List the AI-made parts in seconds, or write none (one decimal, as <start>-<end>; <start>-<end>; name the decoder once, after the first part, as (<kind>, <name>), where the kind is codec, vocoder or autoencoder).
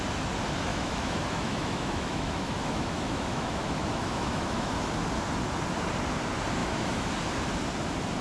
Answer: 0.7-4.7 (autoencoder, DAC-VAE); 6.6-7.1